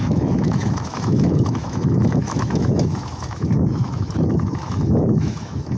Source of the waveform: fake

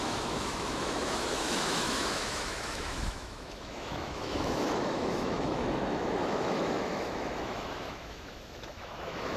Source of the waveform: fake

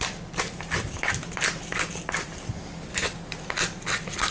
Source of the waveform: real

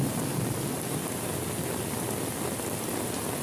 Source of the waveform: real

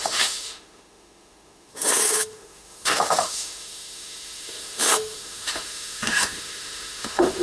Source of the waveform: fake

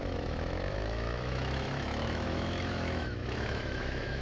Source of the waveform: fake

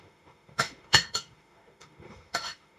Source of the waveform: fake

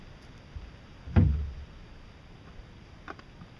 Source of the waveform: real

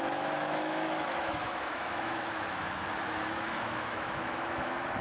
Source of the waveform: fake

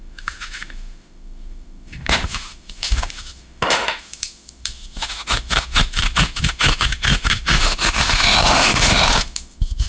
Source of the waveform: fake